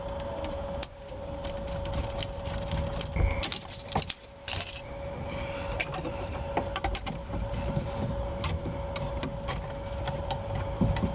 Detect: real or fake fake